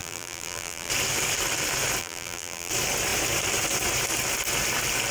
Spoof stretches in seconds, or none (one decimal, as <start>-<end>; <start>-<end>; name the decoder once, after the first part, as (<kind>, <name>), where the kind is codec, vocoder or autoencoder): 0.0-0.9 (vocoder, BigVGAN v2); 2.0-2.7